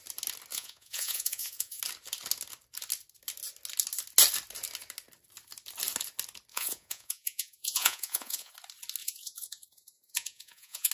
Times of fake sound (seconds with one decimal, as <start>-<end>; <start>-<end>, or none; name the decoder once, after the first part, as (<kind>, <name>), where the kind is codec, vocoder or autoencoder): 0.5-1.8 (vocoder, Vocos); 6.5-8.5; 9.0-10.9